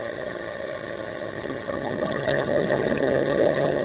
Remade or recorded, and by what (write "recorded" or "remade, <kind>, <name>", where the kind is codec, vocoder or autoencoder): remade, vocoder, HiFi-GAN